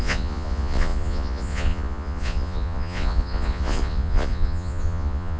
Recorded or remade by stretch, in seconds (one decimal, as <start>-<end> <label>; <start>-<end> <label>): 0.0-5.4 remade